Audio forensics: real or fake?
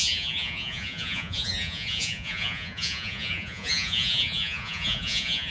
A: fake